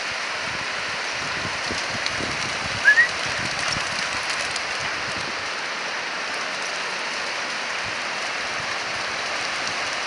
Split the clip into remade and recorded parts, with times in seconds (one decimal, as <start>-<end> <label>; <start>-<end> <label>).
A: 0.0-4.8 recorded; 4.8-9.5 remade; 9.5-10.1 recorded